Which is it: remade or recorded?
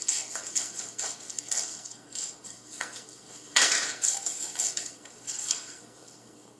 remade